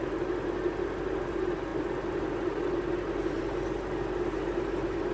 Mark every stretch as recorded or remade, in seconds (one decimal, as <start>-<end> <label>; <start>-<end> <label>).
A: 0.0-5.1 recorded